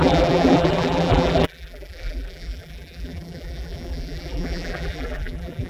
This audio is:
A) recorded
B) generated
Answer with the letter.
B